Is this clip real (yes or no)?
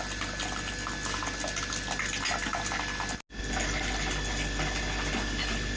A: yes